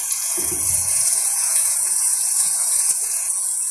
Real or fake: fake